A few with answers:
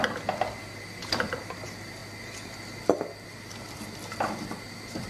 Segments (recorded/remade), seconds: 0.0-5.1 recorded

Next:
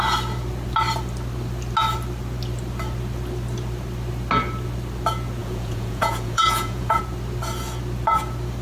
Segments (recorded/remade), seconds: 0.0-5.4 recorded; 5.4-7.0 remade; 7.0-8.6 recorded

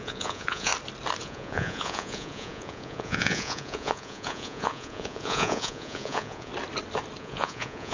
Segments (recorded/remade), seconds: 0.0-0.7 remade; 0.7-1.2 recorded; 1.2-6.5 remade; 6.5-7.2 recorded; 7.2-7.9 remade

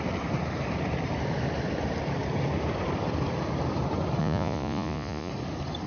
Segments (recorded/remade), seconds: 0.0-4.2 recorded; 4.2-5.3 remade; 5.3-5.9 recorded